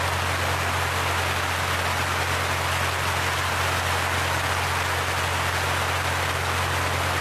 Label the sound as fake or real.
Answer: real